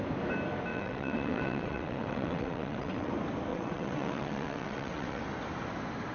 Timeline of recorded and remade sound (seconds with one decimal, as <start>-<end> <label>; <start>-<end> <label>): 0.0-0.7 recorded; 0.7-3.1 remade; 3.1-3.5 recorded; 3.5-5.2 remade; 5.2-6.1 recorded